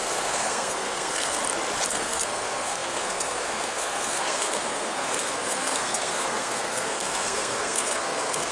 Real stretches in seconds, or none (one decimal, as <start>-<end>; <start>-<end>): 1.4-1.9